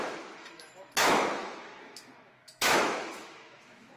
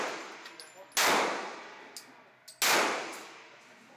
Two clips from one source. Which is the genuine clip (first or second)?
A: second